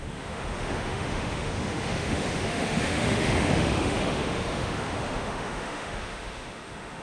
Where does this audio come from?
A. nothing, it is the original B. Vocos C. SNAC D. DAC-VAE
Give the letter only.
D